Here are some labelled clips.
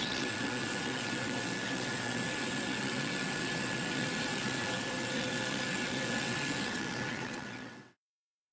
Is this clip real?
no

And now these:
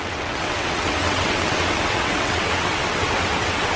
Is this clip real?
no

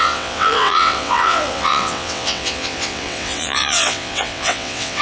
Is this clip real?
no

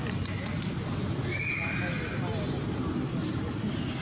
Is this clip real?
yes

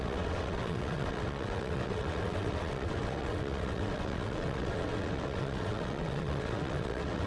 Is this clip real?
no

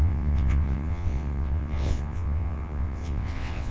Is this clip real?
no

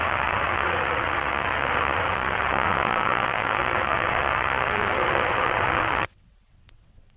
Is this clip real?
no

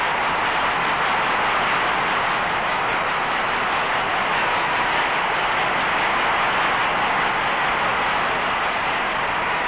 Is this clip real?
yes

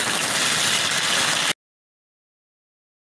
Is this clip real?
yes